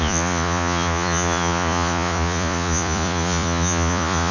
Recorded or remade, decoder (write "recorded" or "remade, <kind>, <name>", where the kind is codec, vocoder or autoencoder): remade, vocoder, Vocos